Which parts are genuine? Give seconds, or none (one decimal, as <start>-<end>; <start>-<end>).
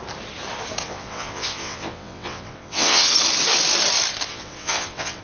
0.0-0.8; 3.1-4.3